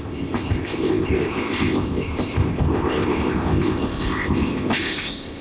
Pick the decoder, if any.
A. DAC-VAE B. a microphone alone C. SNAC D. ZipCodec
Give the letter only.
D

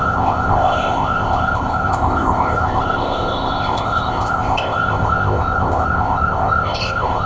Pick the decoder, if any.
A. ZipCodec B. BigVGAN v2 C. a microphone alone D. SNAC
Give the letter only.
A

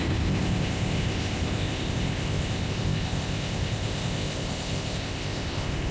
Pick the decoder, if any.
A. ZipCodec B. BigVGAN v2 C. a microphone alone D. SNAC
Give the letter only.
A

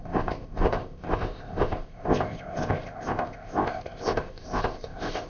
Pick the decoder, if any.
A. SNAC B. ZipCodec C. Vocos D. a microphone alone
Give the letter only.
B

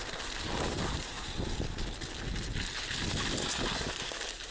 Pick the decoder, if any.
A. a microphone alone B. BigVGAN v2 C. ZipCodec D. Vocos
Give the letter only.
A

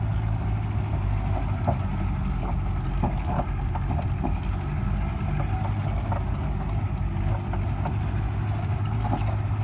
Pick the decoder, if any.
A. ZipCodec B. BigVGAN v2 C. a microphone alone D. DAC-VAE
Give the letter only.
C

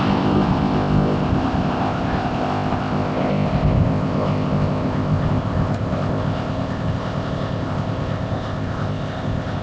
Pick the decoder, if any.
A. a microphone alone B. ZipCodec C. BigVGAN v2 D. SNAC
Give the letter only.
B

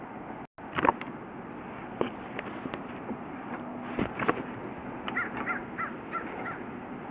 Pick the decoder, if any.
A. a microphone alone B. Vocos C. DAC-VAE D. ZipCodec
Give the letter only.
A